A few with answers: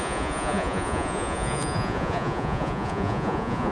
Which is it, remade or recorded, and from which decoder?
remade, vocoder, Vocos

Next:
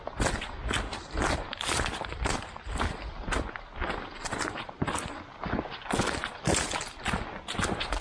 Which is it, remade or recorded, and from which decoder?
recorded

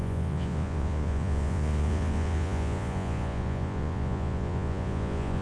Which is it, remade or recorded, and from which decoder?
remade, vocoder, Vocos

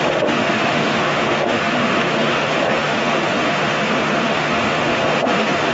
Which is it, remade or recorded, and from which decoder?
remade, autoencoder, DAC-VAE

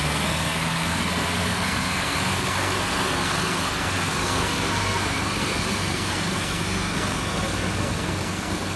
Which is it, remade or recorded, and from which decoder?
remade, codec, SNAC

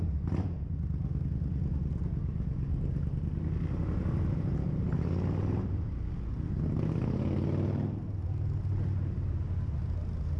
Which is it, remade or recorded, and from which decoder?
recorded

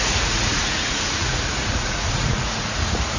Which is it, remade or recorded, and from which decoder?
remade, vocoder, Vocos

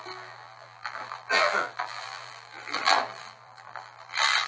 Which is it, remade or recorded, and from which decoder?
remade, vocoder, BigVGAN v2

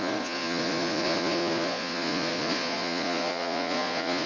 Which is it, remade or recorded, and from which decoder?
remade, vocoder, Vocos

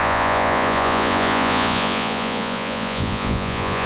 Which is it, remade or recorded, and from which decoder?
remade, vocoder, Vocos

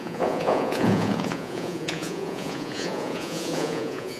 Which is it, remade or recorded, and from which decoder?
remade, vocoder, Vocos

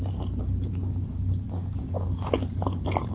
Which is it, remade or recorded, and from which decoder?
recorded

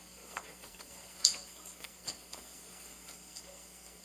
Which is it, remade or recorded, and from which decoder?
remade, codec, SNAC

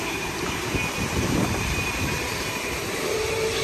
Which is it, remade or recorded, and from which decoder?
remade, vocoder, BigVGAN v2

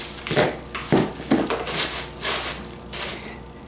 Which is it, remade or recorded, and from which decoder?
recorded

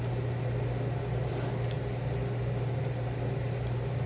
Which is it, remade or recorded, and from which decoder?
recorded